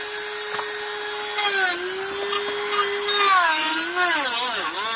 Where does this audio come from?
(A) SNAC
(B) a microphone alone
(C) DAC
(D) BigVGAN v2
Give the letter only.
B